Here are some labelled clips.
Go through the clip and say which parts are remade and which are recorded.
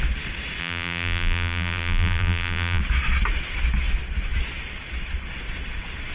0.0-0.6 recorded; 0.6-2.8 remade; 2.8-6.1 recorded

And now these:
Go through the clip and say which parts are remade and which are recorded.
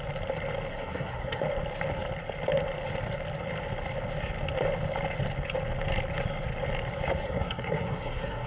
0.0-0.7 recorded; 0.7-1.4 remade; 1.4-7.2 recorded; 7.2-8.5 remade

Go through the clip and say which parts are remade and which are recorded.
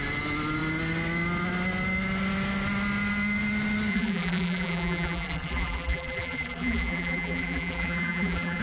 0.0-3.9 recorded; 3.9-8.6 remade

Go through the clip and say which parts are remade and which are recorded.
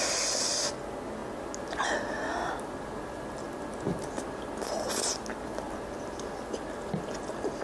0.0-7.6 recorded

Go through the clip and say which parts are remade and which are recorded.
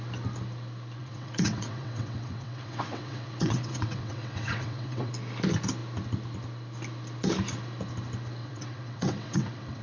0.0-1.0 recorded; 1.0-5.1 remade; 5.1-8.4 recorded; 8.4-9.8 remade